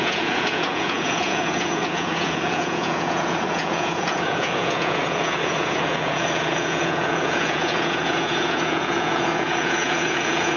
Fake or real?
fake